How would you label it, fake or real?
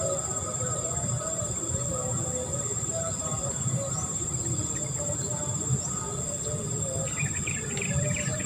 real